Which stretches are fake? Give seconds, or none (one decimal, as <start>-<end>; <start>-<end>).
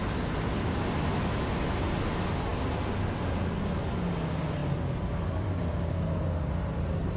none